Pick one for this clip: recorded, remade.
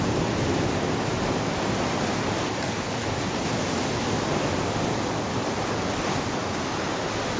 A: recorded